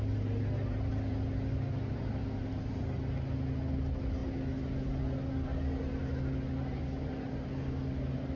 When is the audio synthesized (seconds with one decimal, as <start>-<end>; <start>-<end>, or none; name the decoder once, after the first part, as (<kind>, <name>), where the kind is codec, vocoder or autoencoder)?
none